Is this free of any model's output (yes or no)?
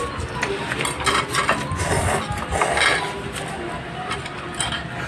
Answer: yes